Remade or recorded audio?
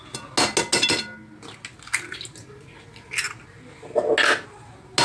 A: recorded